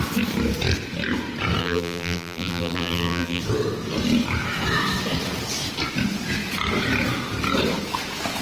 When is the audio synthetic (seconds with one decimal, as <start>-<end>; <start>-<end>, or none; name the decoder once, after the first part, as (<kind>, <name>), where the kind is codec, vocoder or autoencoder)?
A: 1.6-3.4 (vocoder, BigVGAN v2)